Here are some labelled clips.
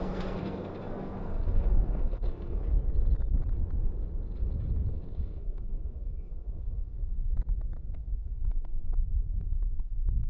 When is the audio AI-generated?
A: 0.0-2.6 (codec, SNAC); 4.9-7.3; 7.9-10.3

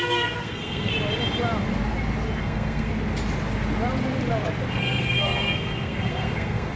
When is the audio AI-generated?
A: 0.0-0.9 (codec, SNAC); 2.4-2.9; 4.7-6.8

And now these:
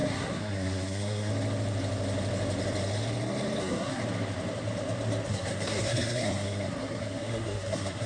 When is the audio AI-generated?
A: 0.0-1.3 (codec, SNAC); 3.6-4.0; 5.3-8.1

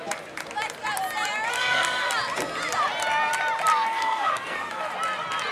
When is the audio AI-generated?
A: 1.5-2.1 (codec, SNAC); 3.7-4.9